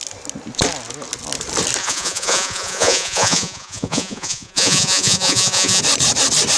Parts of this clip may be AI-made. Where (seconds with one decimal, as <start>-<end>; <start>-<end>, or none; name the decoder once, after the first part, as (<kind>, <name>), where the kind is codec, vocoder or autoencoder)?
1.8-5.8 (vocoder, Vocos)